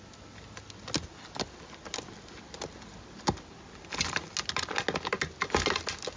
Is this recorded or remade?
recorded